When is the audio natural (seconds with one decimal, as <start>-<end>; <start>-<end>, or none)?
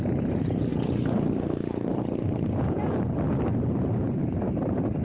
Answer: 0.7-3.7